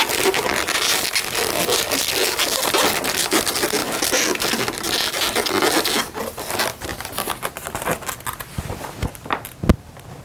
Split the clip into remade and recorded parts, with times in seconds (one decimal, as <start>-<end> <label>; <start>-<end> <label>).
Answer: 0.0-10.2 recorded